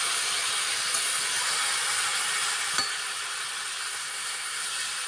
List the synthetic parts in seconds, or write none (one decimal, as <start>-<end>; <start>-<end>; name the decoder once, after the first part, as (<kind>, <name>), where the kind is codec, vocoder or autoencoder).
3.9-4.6 (codec, SNAC)

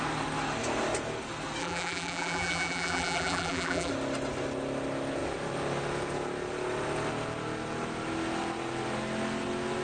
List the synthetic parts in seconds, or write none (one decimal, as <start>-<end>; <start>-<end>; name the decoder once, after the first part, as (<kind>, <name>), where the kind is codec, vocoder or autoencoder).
1.6-3.9 (vocoder, BigVGAN v2)

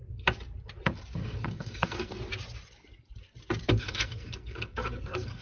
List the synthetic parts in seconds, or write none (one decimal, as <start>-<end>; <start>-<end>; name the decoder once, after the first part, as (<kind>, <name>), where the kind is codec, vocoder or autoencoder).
1.2-2.2 (codec, SNAC); 3.7-5.4

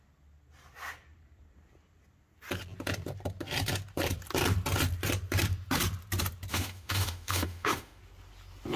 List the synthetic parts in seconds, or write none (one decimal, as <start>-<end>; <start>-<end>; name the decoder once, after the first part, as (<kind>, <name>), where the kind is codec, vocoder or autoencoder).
6.5-8.0 (autoencoder, DAC-VAE)

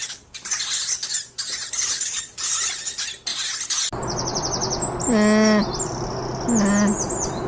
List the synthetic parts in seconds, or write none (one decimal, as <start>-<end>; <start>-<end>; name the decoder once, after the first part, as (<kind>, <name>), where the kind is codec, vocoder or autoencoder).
none